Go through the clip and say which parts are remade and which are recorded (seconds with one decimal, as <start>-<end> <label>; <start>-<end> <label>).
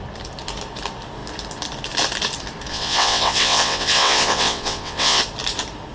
0.0-2.7 recorded; 2.7-5.2 remade; 5.2-5.9 recorded